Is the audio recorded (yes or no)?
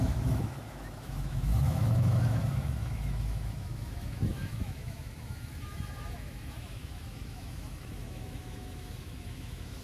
no